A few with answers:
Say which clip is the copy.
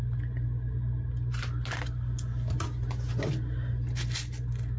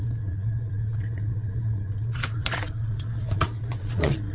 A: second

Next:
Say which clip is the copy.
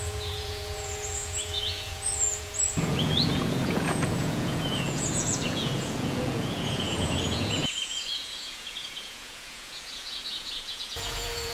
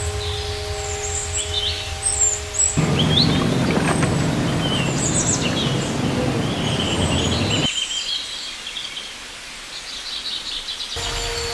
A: first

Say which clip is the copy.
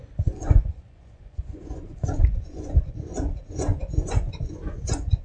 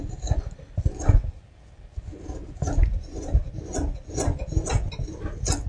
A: first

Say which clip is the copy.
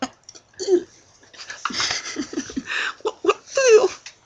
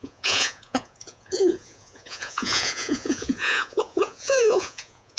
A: second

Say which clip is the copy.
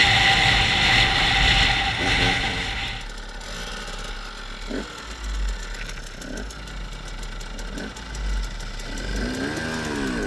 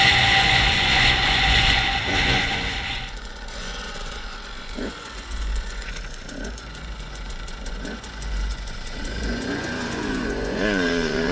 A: second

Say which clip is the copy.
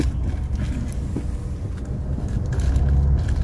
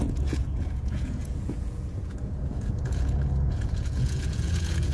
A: second